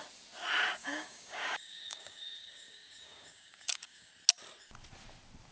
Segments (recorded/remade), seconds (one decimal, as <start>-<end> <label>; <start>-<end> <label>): 0.0-0.8 recorded; 0.8-4.1 remade; 4.1-5.5 recorded